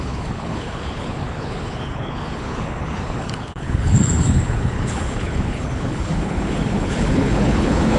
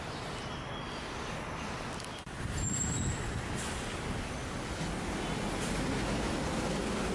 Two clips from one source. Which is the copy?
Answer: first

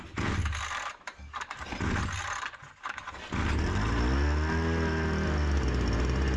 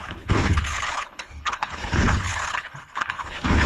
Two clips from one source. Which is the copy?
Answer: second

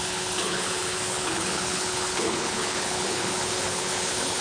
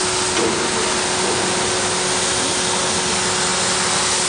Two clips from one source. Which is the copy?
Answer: first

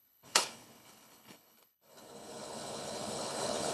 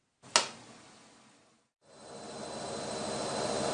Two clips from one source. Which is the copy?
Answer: first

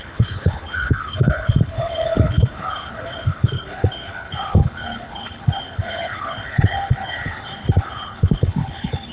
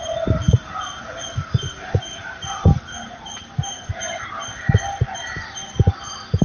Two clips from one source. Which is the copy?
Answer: first